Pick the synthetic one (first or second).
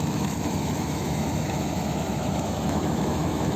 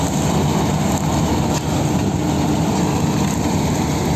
first